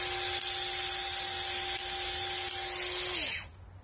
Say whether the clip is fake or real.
real